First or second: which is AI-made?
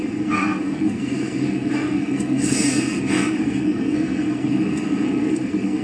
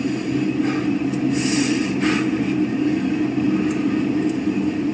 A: first